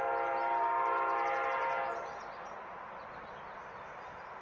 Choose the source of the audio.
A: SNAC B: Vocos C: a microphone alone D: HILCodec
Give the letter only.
C